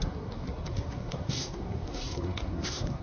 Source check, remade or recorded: remade